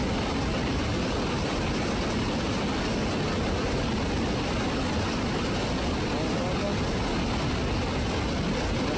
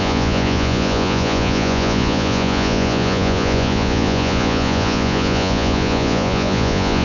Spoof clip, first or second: second